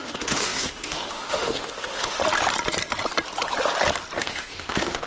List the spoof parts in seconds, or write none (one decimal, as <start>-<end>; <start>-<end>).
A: 0.0-2.2; 4.2-5.1